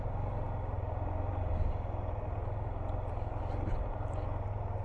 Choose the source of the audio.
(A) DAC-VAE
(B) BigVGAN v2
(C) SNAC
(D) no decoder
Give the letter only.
D